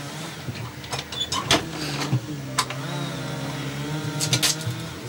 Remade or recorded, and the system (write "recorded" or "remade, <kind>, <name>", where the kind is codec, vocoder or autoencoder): recorded